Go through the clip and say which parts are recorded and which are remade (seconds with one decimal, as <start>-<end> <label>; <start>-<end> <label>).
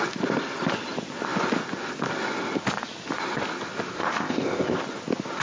0.0-3.9 recorded; 3.9-4.8 remade; 4.8-5.4 recorded